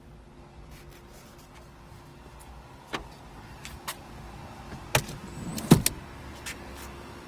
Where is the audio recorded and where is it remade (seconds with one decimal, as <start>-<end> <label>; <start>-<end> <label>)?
0.0-7.3 recorded